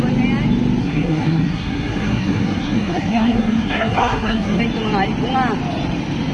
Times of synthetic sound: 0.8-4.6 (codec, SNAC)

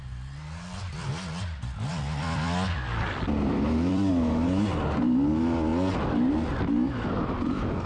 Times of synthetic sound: 1.9-4.1 (vocoder, BigVGAN v2)

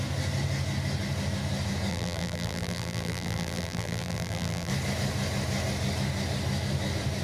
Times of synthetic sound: 1.9-4.7 (vocoder, BigVGAN v2)

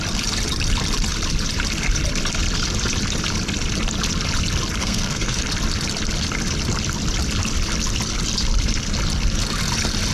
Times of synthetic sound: 4.8-5.4 (codec, SNAC)

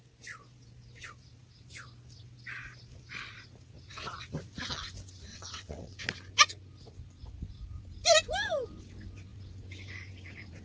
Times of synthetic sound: 5.3-6.0 (vocoder, WaveNeXt)

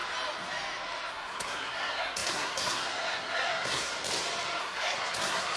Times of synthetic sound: 1.1-3.9 (codec, SNAC); 4.6-5.6